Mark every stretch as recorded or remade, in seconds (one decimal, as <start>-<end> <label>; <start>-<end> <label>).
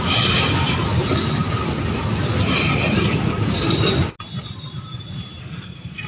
0.0-5.4 recorded; 5.4-6.1 remade